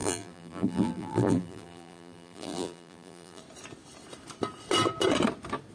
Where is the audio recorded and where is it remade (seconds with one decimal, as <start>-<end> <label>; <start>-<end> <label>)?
0.0-3.4 remade; 3.4-5.7 recorded